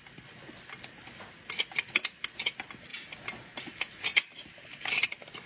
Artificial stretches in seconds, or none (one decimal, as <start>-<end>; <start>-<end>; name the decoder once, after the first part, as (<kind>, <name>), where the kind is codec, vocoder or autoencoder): none